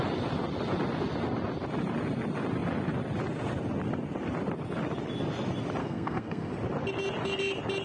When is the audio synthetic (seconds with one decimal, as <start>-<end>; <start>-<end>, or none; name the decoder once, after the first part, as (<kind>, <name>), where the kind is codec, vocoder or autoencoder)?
5.8-6.5 (codec, SNAC)

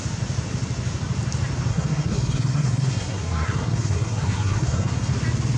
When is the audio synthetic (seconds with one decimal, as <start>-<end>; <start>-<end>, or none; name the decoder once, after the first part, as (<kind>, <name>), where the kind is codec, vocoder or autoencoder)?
1.7-5.1 (codec, SNAC)

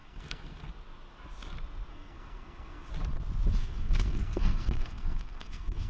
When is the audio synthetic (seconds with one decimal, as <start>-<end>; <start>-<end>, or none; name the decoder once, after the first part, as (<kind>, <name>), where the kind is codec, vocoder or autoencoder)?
0.0-0.7 (codec, SNAC); 1.9-2.9; 3.6-5.9

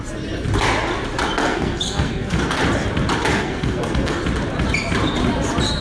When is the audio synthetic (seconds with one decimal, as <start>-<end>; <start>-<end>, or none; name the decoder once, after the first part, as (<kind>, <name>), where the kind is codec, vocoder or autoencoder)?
1.4-2.6 (codec, SNAC); 3.3-4.2